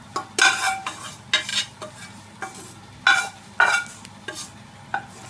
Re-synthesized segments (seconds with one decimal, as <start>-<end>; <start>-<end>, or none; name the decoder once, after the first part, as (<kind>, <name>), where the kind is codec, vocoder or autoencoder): none